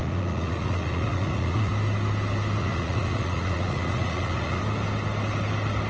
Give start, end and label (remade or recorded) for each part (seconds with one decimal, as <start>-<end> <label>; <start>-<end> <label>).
0.0-1.7 remade; 1.7-2.6 recorded; 2.6-4.6 remade; 4.6-5.9 recorded